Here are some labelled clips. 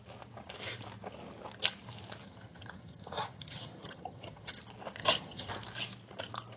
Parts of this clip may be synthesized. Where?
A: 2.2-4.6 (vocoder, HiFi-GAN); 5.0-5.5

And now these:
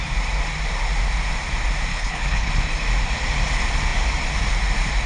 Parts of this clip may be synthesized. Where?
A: 1.9-2.5 (codec, HILCodec)

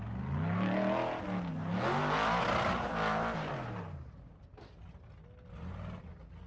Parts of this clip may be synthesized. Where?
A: none

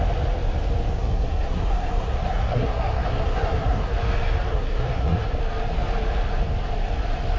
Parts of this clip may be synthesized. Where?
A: 1.0-3.9 (codec, SNAC); 4.5-5.4

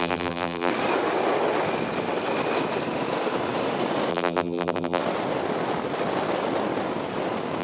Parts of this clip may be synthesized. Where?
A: 0.0-0.7 (vocoder, BigVGAN v2); 4.1-5.0

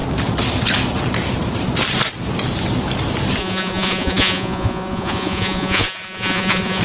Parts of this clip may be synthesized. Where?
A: 3.4-6.8 (vocoder, Vocos)

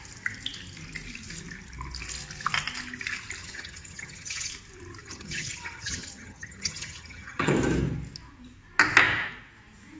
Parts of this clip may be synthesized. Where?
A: 3.4-4.5 (vocoder, HiFi-GAN); 5.0-7.5